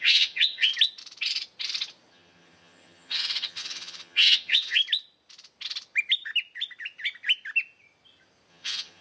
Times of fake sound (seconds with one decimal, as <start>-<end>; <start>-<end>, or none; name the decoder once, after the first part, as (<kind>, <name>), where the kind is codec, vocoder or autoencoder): 0.0-0.7 (vocoder, HiFi-GAN); 2.1-4.8; 8.5-9.0